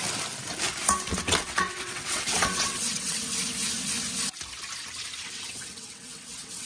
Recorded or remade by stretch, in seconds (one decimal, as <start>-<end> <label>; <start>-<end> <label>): 0.0-1.1 recorded; 1.1-3.2 remade; 3.2-5.2 recorded; 5.2-6.7 remade